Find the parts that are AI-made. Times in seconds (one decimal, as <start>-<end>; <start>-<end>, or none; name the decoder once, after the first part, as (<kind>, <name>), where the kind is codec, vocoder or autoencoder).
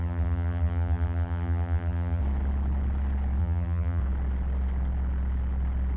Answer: 0.0-2.2 (vocoder, BigVGAN v2); 3.4-4.0